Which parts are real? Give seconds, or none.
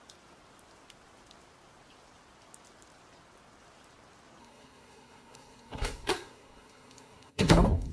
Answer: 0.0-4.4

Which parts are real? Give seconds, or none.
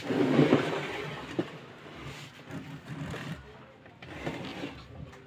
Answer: 4.5-5.3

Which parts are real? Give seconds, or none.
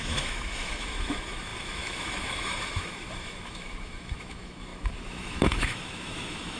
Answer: none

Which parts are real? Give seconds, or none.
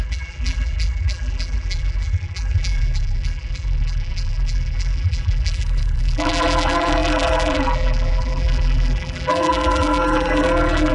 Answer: none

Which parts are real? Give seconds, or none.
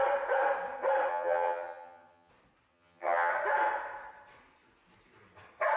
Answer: 0.0-1.1; 2.3-2.7; 3.3-5.8